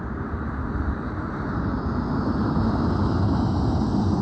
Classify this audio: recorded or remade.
recorded